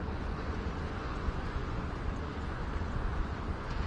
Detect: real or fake fake